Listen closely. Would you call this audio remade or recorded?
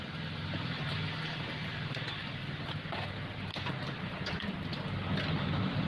recorded